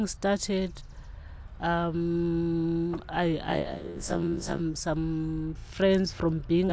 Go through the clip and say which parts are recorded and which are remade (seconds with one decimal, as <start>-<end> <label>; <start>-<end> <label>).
0.0-3.5 recorded; 3.5-4.6 remade; 4.6-6.7 recorded